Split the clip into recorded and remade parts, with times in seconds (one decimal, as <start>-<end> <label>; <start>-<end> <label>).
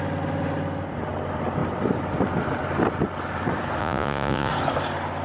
0.0-3.8 recorded; 3.8-4.5 remade; 4.5-5.2 recorded